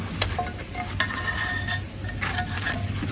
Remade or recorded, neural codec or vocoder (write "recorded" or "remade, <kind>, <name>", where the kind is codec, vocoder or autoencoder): recorded